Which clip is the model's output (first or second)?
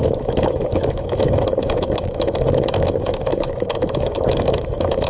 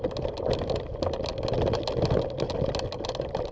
first